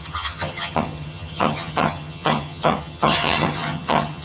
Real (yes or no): no